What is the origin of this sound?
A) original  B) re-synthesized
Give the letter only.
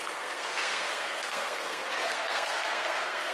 B